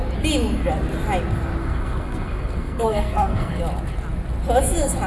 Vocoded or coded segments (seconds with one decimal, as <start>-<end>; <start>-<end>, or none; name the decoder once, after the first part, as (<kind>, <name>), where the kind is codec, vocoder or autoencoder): 1.6-3.6 (codec, SNAC)